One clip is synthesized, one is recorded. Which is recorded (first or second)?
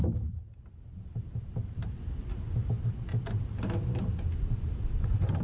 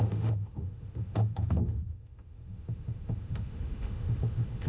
first